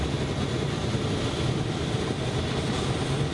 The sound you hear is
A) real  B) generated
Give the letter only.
A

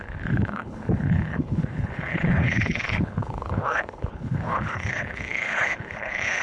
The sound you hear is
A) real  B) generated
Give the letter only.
B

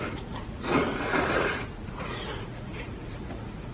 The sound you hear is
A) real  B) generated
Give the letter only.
B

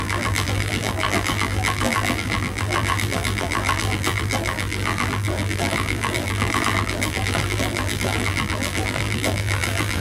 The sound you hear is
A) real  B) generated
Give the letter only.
B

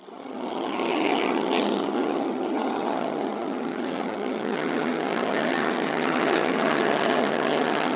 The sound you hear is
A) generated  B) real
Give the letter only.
A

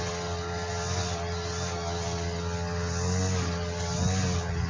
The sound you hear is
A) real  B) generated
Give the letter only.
A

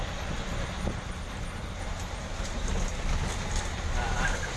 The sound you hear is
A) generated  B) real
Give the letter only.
B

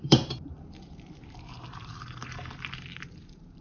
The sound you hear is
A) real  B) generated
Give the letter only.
B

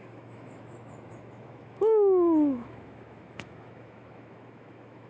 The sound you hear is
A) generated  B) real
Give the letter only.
A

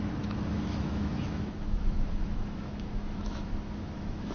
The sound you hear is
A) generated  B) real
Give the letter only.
A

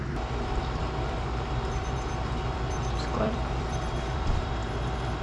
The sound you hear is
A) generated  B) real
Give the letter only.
A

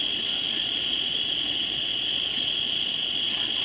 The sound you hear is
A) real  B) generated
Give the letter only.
B